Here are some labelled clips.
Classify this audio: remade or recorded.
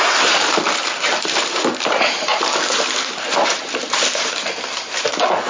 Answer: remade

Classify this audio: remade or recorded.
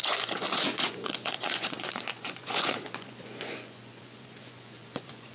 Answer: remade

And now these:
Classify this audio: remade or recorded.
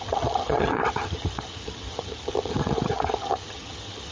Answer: remade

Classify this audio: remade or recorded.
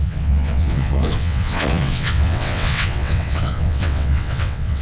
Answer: remade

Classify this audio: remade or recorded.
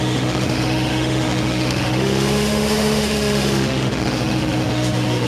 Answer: remade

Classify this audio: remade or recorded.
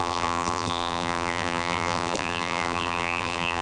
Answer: remade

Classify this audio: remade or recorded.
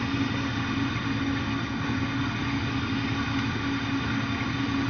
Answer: recorded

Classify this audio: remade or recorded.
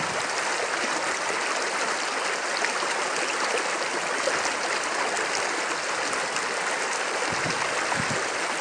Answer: recorded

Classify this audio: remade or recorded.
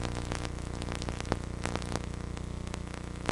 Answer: recorded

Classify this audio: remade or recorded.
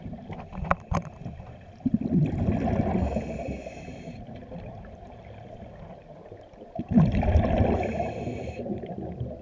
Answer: remade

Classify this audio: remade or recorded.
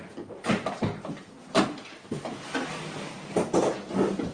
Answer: recorded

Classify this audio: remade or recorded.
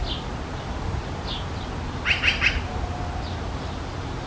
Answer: recorded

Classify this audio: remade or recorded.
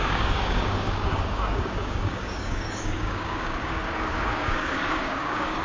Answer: remade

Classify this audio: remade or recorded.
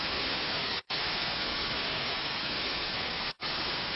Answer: remade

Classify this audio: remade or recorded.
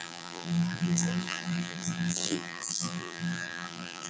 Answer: remade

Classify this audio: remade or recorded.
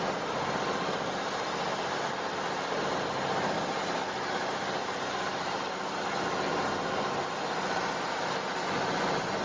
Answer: recorded